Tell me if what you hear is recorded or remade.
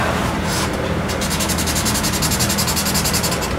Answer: recorded